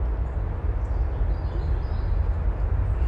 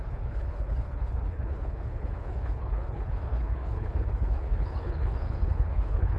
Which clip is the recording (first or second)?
first